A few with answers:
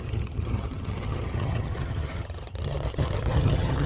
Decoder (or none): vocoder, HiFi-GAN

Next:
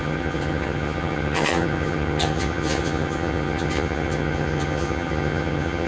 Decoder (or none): vocoder, HiFi-GAN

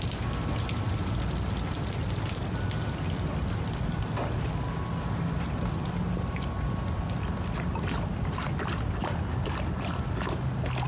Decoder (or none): none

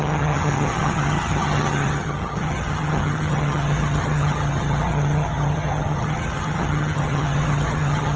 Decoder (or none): vocoder, HiFi-GAN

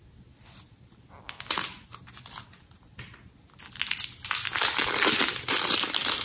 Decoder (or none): none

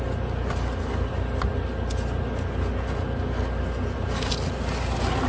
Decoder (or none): none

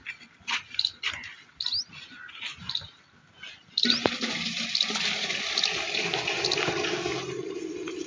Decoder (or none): none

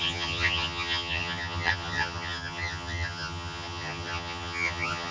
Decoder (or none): vocoder, HiFi-GAN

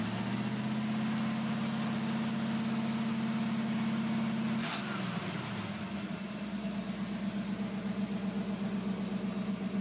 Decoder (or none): none